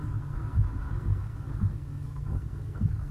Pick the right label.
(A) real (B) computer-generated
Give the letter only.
B